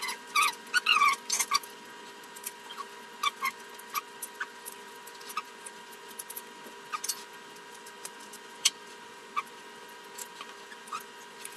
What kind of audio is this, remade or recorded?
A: remade